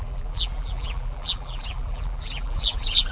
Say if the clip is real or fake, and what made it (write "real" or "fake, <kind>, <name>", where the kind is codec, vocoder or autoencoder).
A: fake, vocoder, BigVGAN v2